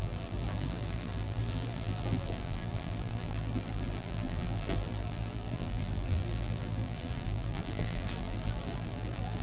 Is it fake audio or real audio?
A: fake